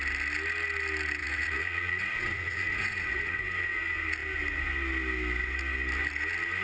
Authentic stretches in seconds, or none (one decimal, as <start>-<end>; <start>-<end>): 0.0-1.2; 3.4-6.6